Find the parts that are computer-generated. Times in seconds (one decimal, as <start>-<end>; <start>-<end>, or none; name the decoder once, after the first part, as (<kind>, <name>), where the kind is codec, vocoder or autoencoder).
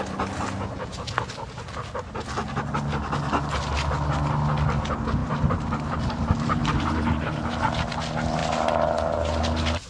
5.2-7.7 (vocoder, BigVGAN v2)